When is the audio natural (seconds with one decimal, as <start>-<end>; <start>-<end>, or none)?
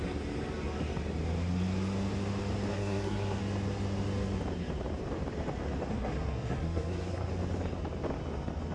0.0-2.7; 3.4-5.9; 7.3-8.7